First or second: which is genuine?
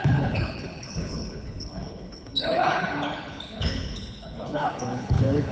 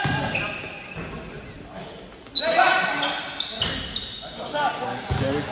second